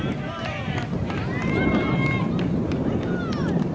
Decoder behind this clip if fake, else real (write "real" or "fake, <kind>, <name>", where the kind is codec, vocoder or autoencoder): fake, vocoder, BigVGAN v2